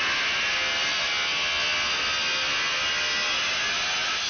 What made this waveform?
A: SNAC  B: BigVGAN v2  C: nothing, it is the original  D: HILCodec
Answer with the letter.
C